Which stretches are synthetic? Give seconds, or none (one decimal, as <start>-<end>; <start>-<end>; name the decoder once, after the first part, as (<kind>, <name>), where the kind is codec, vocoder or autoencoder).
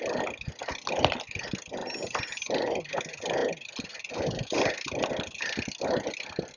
none